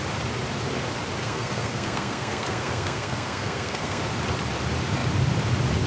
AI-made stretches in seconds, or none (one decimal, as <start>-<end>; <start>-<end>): 1.2-4.0